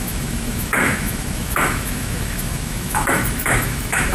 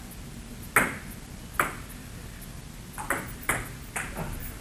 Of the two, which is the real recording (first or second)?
second